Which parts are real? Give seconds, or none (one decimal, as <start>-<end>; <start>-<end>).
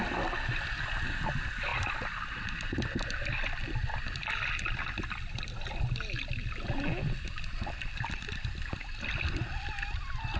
0.0-10.4